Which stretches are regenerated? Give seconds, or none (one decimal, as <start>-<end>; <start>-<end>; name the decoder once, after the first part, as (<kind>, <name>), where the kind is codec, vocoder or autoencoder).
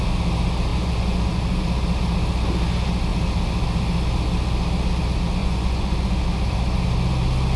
0.7-1.4 (vocoder, Vocos); 5.4-6.2